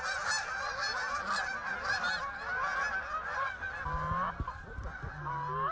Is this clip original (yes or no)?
yes